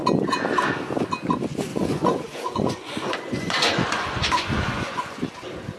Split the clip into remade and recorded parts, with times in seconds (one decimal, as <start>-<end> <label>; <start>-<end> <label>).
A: 0.0-1.7 recorded; 1.7-5.2 remade; 5.2-5.8 recorded